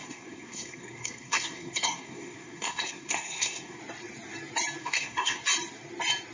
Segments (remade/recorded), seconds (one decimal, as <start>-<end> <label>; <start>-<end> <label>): 0.0-3.8 remade; 3.8-4.8 recorded; 4.8-5.4 remade; 5.4-6.3 recorded